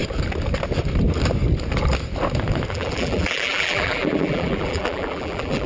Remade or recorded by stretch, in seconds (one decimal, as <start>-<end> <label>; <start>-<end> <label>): 0.0-2.7 recorded; 2.7-5.7 remade